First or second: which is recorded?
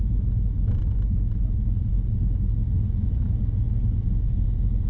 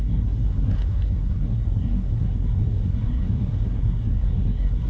first